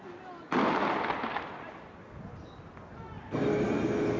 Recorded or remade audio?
recorded